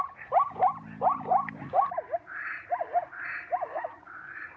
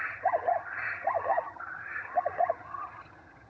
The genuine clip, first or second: first